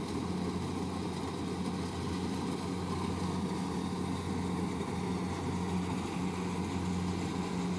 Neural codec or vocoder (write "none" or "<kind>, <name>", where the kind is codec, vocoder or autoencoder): none